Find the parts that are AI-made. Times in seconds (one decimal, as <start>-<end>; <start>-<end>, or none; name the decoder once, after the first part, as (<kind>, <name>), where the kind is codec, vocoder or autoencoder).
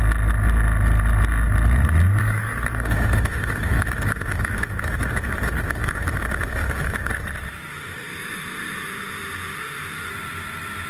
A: 2.2-7.1 (autoencoder, DAC-VAE); 7.7-10.1